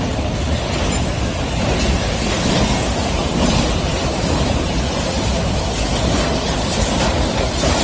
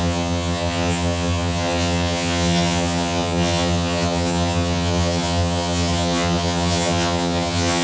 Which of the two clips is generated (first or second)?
second